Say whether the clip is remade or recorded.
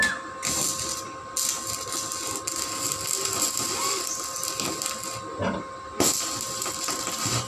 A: recorded